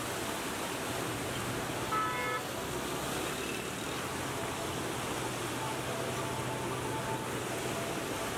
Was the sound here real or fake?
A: real